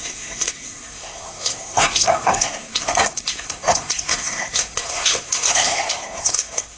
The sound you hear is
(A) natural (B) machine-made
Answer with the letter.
B